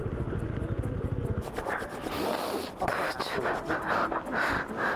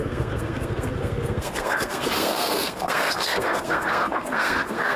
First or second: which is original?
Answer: first